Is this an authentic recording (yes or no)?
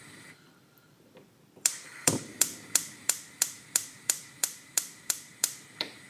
no